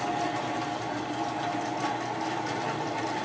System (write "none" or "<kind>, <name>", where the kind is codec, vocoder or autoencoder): none